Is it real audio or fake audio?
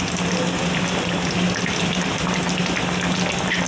real